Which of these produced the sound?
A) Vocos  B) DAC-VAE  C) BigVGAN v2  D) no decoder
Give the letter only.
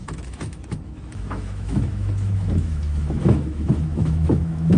B